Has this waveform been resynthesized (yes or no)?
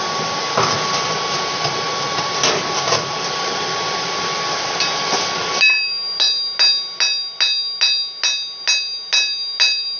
no